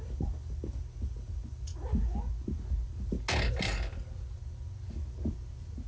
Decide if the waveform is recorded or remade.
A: recorded